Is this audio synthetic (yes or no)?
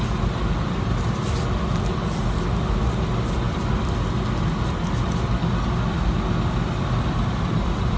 no